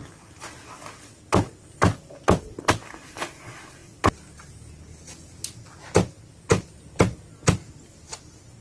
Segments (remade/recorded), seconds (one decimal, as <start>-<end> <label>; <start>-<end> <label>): 0.0-8.6 recorded